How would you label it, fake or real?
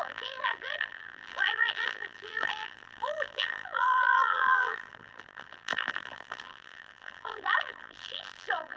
fake